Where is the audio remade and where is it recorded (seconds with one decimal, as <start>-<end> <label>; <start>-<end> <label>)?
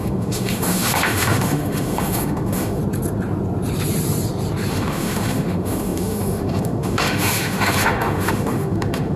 0.0-2.8 remade; 2.8-4.7 recorded; 4.7-9.2 remade